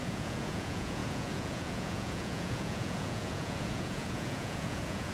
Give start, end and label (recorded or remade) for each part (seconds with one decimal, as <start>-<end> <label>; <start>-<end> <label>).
0.0-5.1 remade